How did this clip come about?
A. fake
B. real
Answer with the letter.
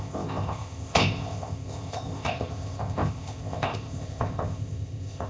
A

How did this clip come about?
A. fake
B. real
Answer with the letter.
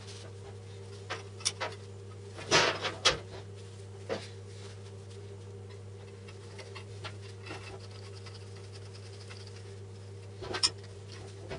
B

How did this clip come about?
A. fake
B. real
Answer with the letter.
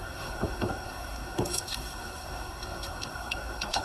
A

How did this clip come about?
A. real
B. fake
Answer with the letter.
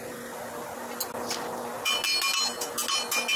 A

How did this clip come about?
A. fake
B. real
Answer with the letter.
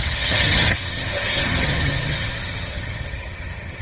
A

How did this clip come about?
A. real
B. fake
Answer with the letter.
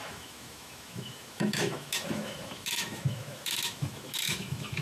B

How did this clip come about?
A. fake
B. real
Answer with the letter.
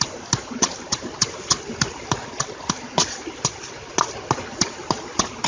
B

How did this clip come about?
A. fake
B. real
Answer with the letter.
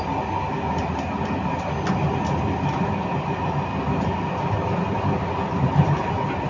B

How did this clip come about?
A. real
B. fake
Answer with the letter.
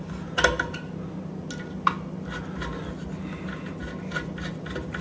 A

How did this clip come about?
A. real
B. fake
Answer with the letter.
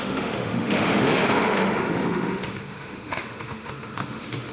B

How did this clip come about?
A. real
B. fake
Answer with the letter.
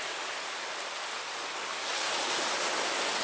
A